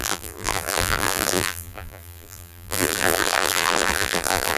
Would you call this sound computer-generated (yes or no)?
yes